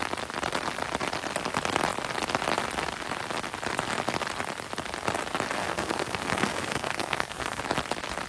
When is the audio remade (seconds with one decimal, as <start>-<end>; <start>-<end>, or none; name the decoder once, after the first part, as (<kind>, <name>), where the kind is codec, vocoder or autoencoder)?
5.6-7.6 (codec, SNAC)